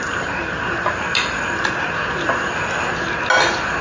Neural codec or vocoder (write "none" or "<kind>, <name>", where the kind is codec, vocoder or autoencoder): none